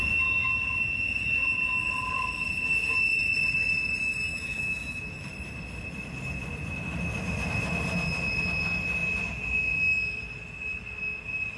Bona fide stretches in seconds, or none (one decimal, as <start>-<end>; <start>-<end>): 0.0-4.3; 5.3-11.6